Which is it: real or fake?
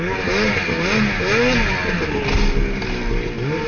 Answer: real